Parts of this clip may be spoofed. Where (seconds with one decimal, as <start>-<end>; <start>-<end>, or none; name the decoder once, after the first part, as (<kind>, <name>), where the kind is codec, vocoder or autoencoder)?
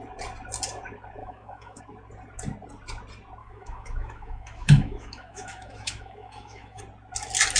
1.2-1.8 (autoencoder, DAC-VAE); 3.4-6.8